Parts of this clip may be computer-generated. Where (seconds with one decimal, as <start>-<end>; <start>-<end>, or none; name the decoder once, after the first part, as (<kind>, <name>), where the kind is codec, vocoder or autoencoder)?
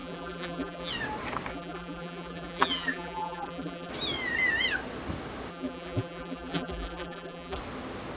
0.0-0.9 (vocoder, BigVGAN v2); 1.5-3.9; 5.5-7.6